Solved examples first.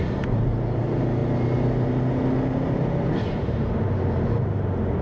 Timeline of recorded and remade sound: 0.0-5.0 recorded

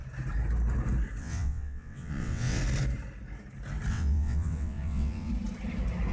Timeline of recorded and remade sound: 0.0-1.2 recorded; 1.2-2.6 remade; 2.6-3.9 recorded; 3.9-5.3 remade; 5.3-6.1 recorded

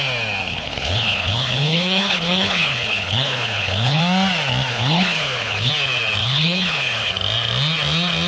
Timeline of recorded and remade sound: 0.0-0.5 recorded; 0.5-4.0 remade; 4.0-4.7 recorded; 4.7-5.7 remade; 5.7-6.2 recorded; 6.2-7.1 remade; 7.1-8.3 recorded

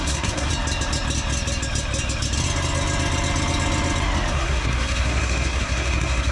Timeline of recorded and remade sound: 0.0-0.5 remade; 0.5-4.3 recorded; 4.3-6.3 remade